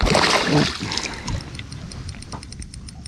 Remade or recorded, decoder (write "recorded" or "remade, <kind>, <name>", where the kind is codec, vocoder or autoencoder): recorded